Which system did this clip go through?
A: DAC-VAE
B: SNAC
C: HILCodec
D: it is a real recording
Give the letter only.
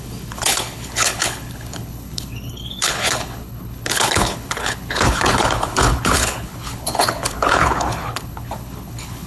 C